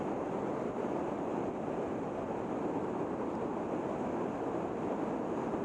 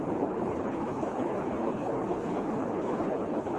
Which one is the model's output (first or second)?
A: second